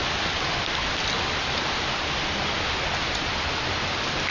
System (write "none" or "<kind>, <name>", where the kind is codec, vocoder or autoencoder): none